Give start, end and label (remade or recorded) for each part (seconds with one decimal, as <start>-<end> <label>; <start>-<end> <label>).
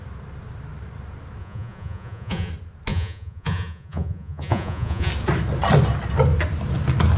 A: 0.0-1.4 recorded; 1.4-2.5 remade; 2.5-2.9 recorded; 2.9-5.1 remade; 5.1-7.2 recorded